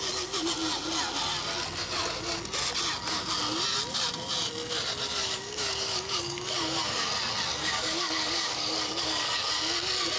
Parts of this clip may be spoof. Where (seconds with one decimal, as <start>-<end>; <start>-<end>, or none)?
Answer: 5.2-7.1; 7.6-9.5

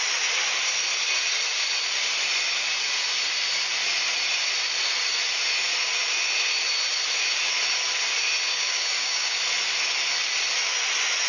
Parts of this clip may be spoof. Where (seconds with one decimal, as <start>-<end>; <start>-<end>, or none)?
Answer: 8.5-9.4

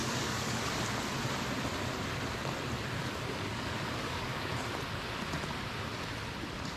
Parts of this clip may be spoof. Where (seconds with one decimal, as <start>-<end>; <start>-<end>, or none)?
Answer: 0.0-0.6; 3.0-4.5

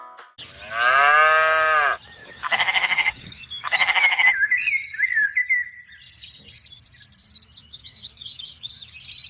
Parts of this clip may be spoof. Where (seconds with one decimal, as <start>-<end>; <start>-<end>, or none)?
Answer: 2.2-4.5; 7.6-8.7

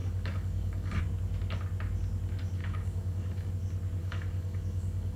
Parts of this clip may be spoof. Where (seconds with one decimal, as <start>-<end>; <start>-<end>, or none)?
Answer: 0.0-1.0; 2.6-3.5; 4.0-5.2

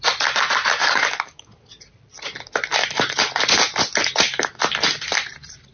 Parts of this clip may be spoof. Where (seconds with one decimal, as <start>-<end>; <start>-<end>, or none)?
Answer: 0.8-1.5

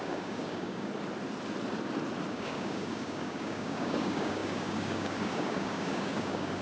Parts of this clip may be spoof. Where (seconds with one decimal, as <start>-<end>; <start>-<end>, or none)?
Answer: 0.0-0.9; 2.3-6.6

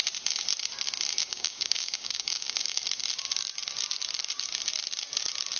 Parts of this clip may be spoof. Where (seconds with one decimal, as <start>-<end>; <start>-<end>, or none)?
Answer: 1.2-2.8